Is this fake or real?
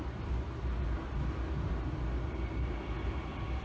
real